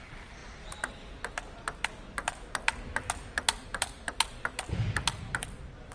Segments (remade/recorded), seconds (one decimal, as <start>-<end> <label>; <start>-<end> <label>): 0.0-5.9 recorded